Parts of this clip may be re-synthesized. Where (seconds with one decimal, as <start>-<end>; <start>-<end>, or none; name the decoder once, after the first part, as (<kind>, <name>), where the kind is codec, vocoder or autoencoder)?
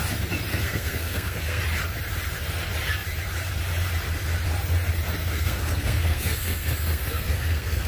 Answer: 0.5-1.6 (codec, SNAC); 5.2-7.9